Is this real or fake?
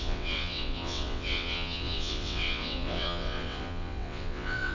fake